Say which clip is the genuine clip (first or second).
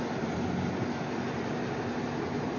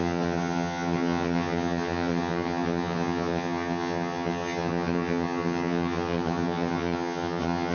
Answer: first